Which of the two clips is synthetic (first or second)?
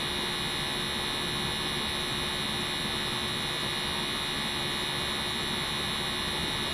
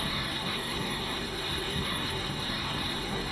second